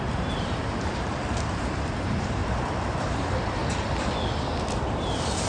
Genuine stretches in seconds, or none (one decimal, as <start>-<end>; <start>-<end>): 2.4-3.0; 3.6-4.9